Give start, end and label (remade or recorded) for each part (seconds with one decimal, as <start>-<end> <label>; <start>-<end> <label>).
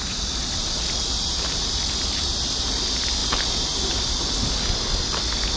0.0-5.6 recorded